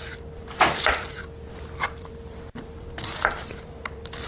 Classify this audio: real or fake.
fake